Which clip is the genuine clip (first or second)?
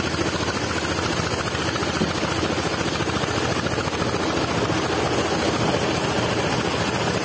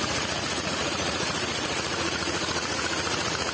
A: first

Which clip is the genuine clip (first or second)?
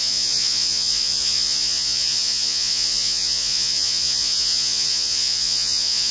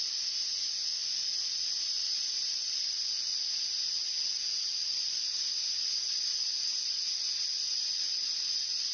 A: second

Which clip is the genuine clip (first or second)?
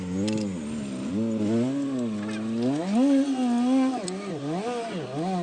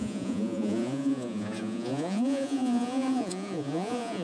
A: first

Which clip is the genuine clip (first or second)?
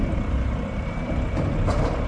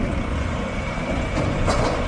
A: first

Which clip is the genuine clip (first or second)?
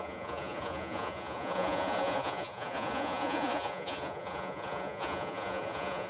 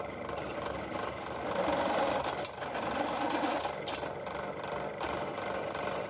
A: second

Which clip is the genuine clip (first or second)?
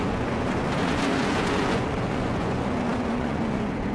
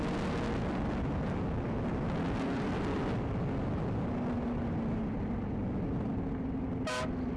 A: second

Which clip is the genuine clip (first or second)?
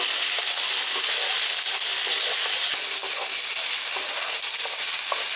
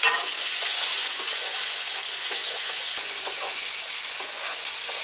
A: first